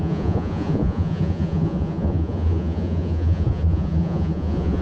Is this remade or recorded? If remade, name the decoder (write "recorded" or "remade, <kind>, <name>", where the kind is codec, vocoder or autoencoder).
remade, vocoder, Vocos